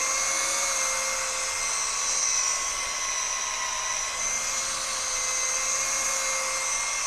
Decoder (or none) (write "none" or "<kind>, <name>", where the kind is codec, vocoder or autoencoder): none